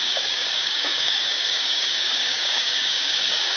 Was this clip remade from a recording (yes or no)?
yes